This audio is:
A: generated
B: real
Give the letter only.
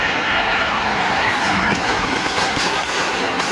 A